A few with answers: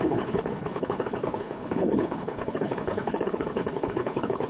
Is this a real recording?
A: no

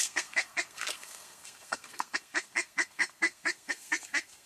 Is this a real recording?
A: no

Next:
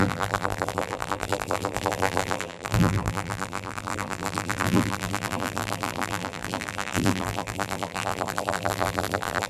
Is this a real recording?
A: no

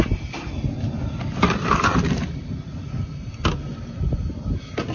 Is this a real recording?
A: yes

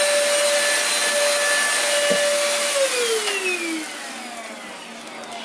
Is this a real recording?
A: yes